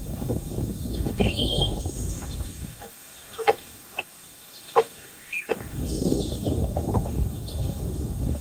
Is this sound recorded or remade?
remade